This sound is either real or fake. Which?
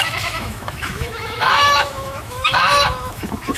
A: fake